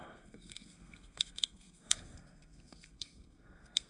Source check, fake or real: fake